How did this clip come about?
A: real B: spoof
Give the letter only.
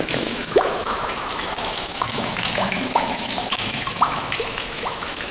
B